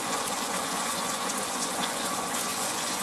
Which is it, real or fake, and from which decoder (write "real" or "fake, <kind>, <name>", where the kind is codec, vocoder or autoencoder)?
fake, vocoder, Vocos